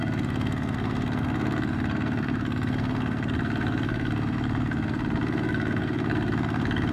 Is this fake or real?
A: fake